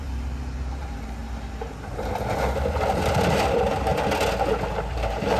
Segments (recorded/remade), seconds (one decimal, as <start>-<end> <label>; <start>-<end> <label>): 0.0-1.2 remade; 1.2-2.9 recorded; 2.9-3.9 remade; 3.9-4.9 recorded; 4.9-5.4 remade